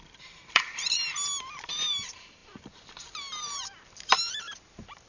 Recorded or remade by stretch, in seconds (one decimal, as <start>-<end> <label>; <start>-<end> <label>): 0.0-1.0 remade; 1.0-1.7 recorded; 1.7-5.1 remade